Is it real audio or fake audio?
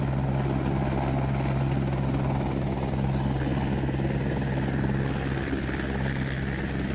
real